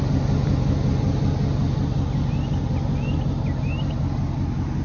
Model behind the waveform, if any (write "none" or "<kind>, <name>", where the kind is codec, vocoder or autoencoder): none